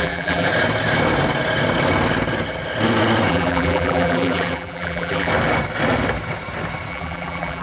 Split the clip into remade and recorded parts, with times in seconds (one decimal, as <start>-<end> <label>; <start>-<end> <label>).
0.0-0.5 remade; 0.5-3.3 recorded; 3.3-5.3 remade; 5.3-6.9 recorded; 6.9-7.6 remade